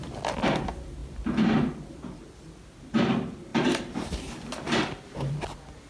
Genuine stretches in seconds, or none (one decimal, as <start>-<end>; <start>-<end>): 0.0-1.0; 1.5-3.5; 5.4-5.9

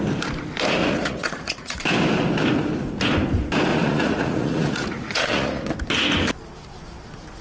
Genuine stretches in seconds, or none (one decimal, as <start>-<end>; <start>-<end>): 0.0-0.8; 1.8-3.7; 5.6-7.4

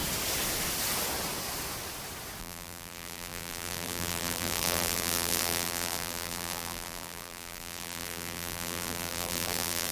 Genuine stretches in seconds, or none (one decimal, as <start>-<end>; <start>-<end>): 0.0-2.4